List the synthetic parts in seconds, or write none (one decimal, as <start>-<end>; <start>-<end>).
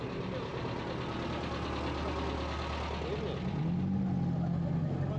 none